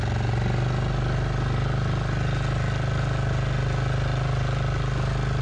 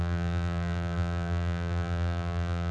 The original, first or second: first